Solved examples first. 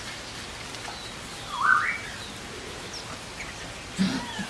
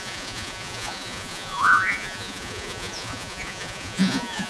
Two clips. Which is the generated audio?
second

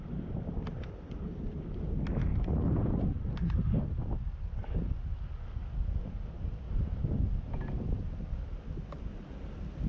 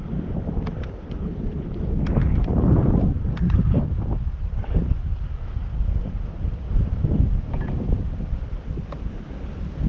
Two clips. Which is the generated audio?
second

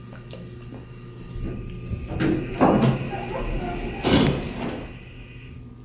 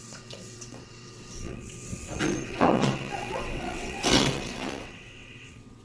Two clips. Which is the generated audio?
second